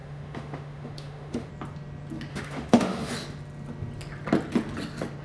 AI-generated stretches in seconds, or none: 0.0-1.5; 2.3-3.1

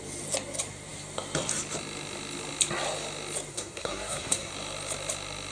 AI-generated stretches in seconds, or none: 3.5-4.5

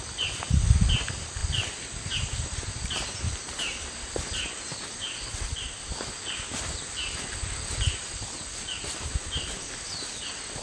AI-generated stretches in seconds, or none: none

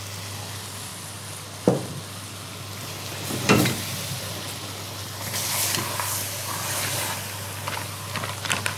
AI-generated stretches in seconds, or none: none

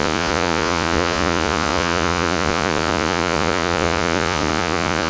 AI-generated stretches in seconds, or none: 0.0-5.1